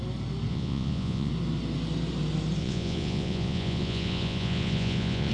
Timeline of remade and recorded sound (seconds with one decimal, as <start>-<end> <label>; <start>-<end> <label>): 0.0-0.5 recorded; 0.5-1.3 remade; 1.3-2.6 recorded; 2.6-5.3 remade